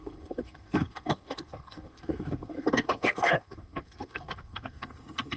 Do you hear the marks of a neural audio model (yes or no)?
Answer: yes